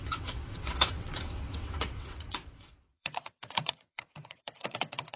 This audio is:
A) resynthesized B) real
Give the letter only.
A